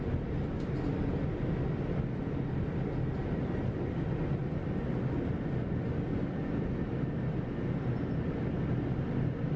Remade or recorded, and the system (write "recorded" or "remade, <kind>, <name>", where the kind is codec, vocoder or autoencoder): recorded